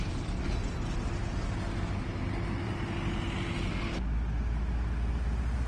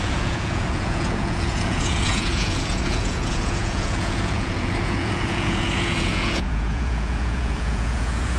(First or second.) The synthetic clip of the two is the second